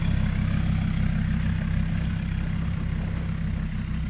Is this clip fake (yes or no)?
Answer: no